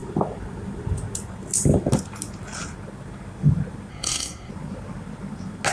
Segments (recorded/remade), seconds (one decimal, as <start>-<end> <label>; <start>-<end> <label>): 0.0-3.9 recorded; 3.9-4.5 remade; 4.5-5.7 recorded